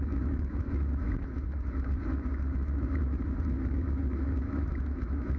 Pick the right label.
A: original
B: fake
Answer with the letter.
B